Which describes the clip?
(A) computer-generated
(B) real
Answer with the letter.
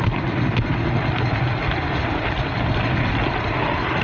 B